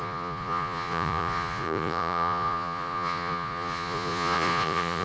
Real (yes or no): no